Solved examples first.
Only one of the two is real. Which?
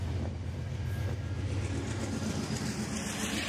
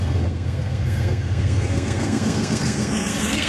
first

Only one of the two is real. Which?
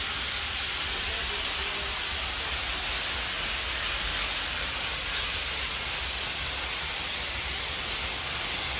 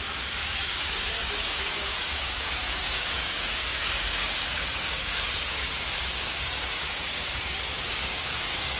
first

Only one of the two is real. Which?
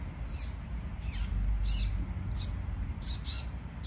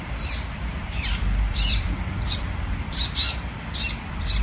first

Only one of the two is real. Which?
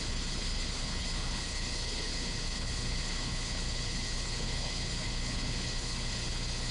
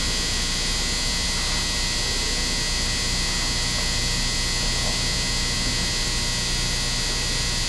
second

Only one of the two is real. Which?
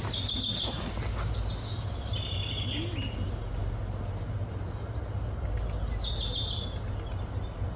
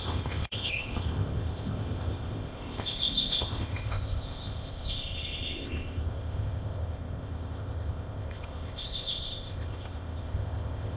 first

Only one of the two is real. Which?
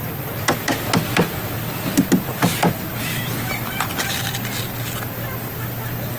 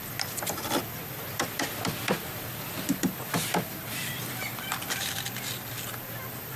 first